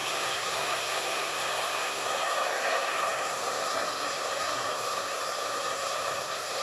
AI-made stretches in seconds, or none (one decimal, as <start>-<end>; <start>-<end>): 0.0-6.6